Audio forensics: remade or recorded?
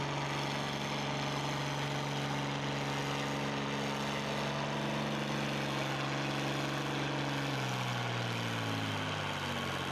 recorded